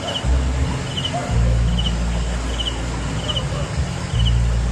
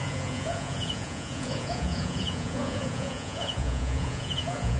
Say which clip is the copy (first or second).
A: second